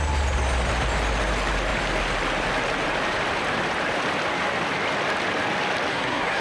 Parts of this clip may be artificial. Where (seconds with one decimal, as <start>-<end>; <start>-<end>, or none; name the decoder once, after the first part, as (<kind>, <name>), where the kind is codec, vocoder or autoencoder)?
5.9-6.4 (codec, SNAC)